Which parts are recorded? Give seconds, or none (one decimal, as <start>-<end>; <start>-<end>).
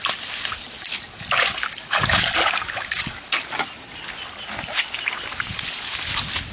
0.0-0.9; 3.4-6.5